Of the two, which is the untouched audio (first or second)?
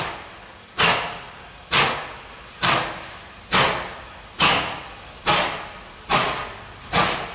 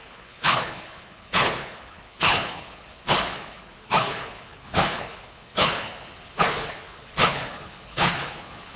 first